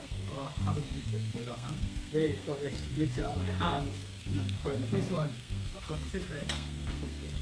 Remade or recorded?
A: remade